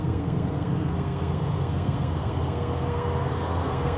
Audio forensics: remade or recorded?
remade